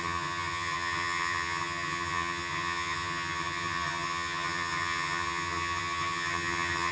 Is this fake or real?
fake